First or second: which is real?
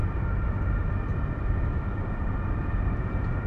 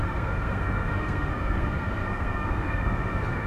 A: first